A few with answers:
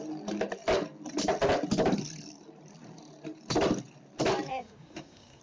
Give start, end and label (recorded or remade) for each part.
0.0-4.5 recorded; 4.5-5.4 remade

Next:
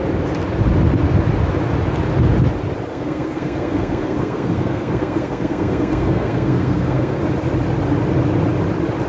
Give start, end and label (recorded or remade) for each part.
0.0-2.9 recorded; 2.9-7.2 remade; 7.2-9.1 recorded